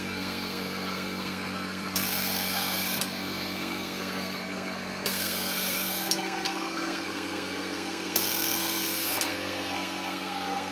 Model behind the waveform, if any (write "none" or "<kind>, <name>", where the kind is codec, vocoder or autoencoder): codec, SNAC